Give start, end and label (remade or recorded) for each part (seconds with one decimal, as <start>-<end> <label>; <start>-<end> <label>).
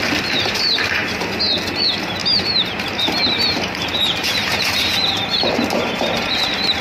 0.0-2.2 recorded; 2.2-6.3 remade; 6.3-6.8 recorded